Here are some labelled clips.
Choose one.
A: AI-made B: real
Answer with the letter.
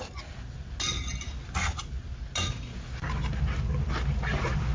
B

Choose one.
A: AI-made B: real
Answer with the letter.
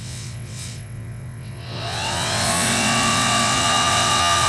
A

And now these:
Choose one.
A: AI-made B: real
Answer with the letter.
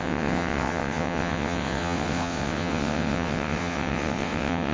A